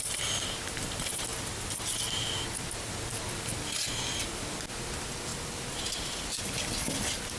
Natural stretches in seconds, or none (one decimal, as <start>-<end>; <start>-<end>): 0.0-5.3; 5.8-7.4

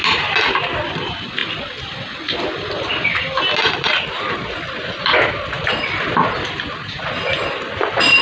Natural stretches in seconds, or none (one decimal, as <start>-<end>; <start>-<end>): 0.0-0.8; 1.4-3.6; 5.7-7.0

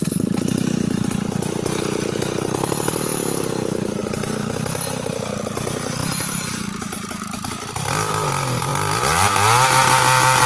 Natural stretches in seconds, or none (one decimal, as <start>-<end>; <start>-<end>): 0.0-3.1; 4.0-6.0; 7.5-10.5

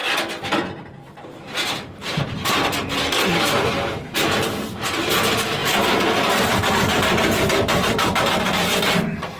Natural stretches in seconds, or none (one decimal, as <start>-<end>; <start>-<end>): 0.0-0.6

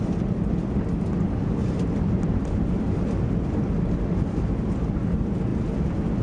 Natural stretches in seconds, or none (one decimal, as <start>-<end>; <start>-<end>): 0.0-1.6; 3.3-6.2

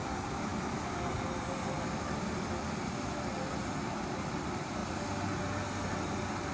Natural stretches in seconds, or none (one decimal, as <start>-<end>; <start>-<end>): 0.5-3.8; 4.8-6.5

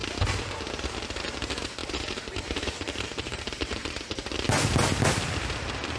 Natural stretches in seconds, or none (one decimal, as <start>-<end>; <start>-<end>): 0.0-1.8; 4.3-6.0

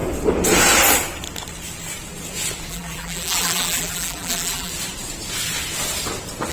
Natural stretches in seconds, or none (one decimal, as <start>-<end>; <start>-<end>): 0.0-2.7; 4.7-6.5